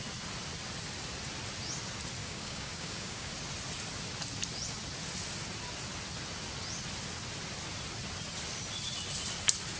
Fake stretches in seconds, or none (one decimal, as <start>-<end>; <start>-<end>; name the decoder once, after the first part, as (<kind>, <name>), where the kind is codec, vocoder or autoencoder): 2.2-3.3 (codec, DAC)

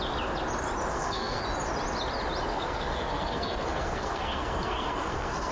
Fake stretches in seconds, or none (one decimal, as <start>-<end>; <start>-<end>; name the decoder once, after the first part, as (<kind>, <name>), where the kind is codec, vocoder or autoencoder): 0.9-1.4 (codec, SNAC); 2.5-5.5